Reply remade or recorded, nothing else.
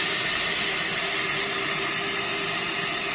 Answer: recorded